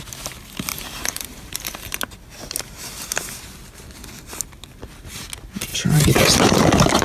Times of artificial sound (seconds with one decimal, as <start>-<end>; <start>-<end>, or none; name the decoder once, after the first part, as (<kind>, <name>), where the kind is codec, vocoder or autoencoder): 0.7-1.8 (vocoder, BigVGAN v2); 5.7-6.3